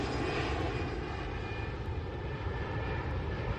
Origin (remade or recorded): recorded